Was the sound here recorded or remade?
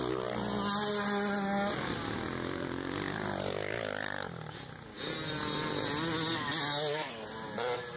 recorded